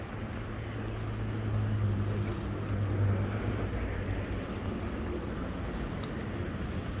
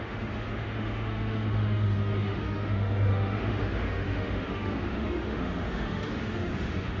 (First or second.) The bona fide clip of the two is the first